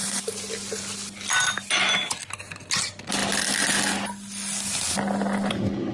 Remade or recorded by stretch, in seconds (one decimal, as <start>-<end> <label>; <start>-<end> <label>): 0.0-5.9 recorded